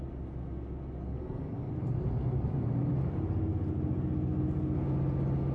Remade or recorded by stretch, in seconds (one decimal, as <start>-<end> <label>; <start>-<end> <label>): 0.0-1.1 recorded; 1.1-1.7 remade; 1.7-5.5 recorded